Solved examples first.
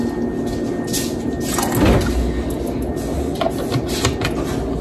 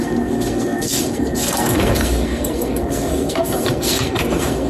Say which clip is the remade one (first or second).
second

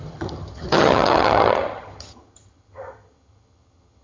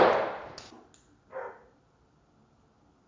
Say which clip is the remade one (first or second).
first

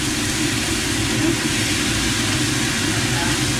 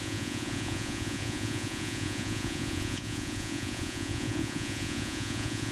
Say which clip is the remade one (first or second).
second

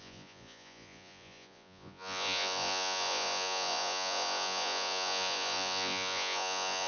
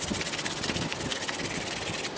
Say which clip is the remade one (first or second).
first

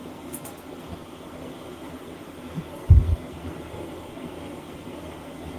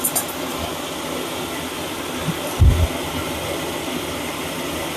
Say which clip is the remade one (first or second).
first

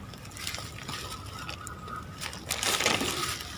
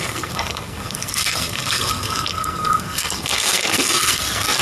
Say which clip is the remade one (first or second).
second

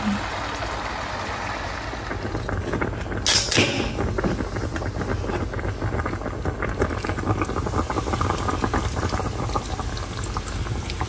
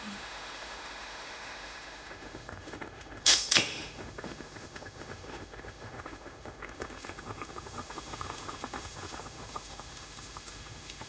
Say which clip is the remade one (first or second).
second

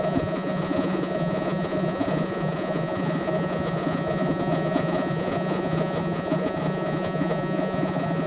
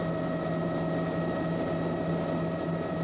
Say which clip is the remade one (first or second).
first